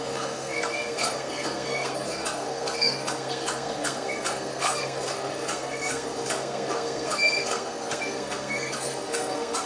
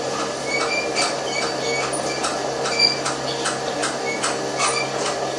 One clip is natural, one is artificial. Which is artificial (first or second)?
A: first